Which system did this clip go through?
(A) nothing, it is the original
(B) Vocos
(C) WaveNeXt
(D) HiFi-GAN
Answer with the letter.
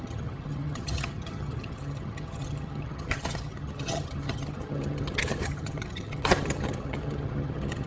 D